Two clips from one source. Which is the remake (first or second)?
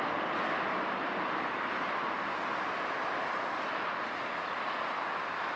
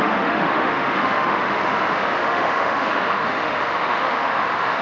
second